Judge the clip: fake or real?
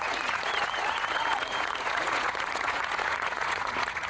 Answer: fake